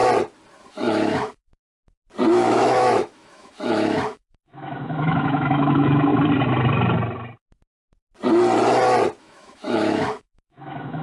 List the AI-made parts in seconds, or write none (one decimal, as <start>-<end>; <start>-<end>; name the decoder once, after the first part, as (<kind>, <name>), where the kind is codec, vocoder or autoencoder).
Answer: 0.7-1.5 (autoencoder, DAC-VAE); 2.3-6.1; 9.2-11.0